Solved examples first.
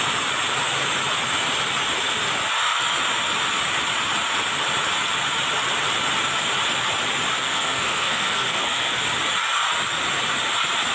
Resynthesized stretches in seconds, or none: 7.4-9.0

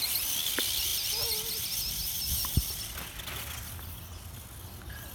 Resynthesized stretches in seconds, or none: none

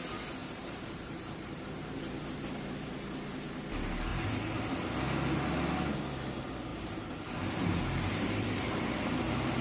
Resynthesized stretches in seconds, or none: 0.4-2.0; 4.1-4.7; 6.7-9.6

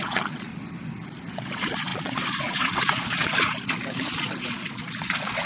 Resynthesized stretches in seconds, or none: 0.0-0.5; 1.3-5.5

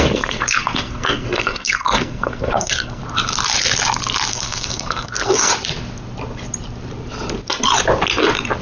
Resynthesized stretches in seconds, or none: 0.0-3.0; 4.3-5.5